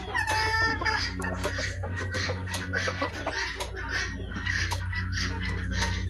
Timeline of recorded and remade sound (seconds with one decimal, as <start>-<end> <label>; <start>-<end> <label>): 0.0-0.7 recorded; 0.7-3.1 remade; 3.1-4.3 recorded; 4.3-6.1 remade